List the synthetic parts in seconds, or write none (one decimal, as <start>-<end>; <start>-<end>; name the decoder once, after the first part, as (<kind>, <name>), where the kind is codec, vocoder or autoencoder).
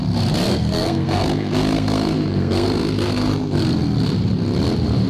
0.5-3.6 (codec, SNAC)